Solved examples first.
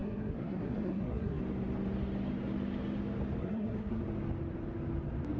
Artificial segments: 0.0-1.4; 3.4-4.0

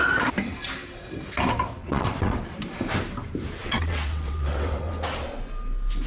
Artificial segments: 1.8-2.4; 3.6-4.9

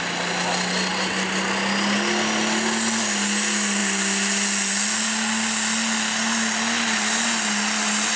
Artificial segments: none

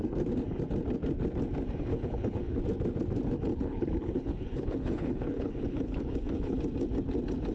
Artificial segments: 1.9-2.6; 3.5-6.6

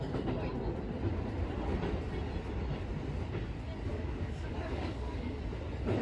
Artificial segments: 3.9-5.4